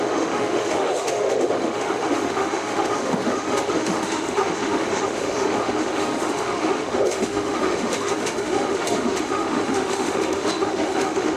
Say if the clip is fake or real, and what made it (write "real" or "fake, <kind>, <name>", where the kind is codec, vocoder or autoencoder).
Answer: fake, autoencoder, DAC-VAE